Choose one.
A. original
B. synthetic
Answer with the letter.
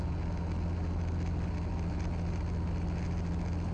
A